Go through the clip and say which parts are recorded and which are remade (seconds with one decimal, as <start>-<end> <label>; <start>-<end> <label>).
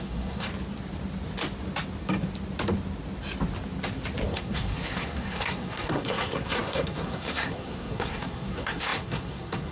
0.0-0.5 remade; 0.5-4.3 recorded; 4.3-9.7 remade